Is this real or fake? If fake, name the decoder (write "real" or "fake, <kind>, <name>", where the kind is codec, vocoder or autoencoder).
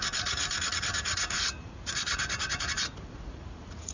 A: fake, vocoder, Vocos